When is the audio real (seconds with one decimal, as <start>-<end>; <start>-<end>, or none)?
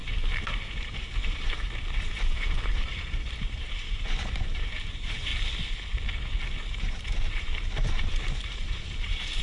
5.3-6.7